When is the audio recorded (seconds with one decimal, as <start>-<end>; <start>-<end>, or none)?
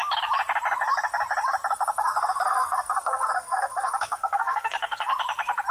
0.0-2.0; 5.1-5.7